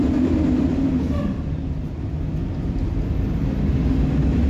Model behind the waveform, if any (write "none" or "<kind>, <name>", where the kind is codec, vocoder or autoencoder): vocoder, BigVGAN v2